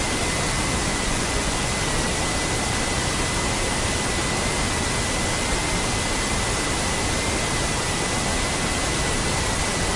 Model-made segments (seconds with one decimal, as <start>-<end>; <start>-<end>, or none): 0.9-1.7